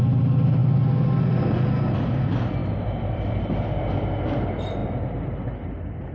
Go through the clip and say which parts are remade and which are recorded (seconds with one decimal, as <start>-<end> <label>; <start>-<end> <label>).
0.0-2.6 recorded; 2.6-3.2 remade; 3.2-6.1 recorded